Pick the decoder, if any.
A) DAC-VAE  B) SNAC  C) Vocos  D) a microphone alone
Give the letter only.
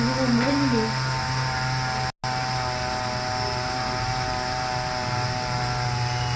D